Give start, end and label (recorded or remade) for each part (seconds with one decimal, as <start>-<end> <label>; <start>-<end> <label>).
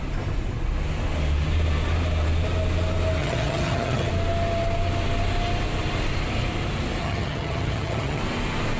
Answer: 0.0-3.2 recorded; 3.2-4.1 remade; 4.1-7.0 recorded; 7.0-8.2 remade; 8.2-8.8 recorded